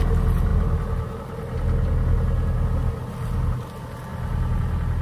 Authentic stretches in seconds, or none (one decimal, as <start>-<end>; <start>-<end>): 0.0-5.0